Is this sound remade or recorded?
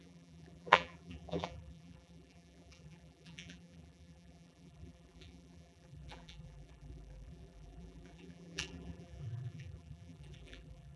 remade